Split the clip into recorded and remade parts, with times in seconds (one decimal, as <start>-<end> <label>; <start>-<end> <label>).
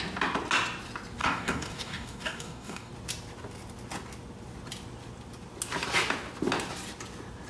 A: 0.0-1.2 recorded; 1.2-2.9 remade; 2.9-7.5 recorded